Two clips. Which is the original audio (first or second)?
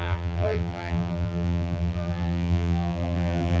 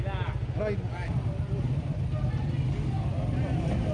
second